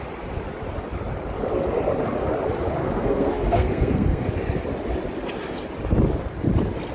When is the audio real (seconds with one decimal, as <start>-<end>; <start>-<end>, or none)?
0.0-2.8; 4.3-6.9